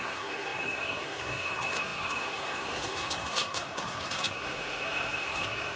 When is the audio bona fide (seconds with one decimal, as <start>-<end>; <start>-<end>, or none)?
none

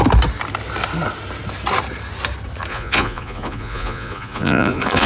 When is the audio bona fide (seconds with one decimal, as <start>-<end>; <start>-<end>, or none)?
0.0-2.7